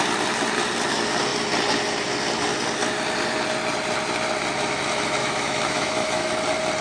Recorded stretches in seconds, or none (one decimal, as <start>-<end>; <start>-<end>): 0.0-5.2; 6.3-6.8